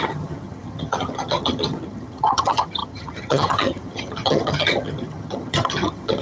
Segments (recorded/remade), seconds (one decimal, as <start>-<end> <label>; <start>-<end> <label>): 0.0-6.2 remade